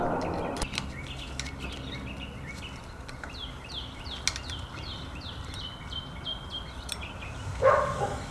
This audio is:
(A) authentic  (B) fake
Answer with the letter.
A